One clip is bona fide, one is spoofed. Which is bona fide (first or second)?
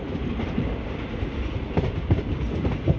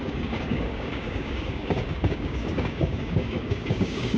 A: first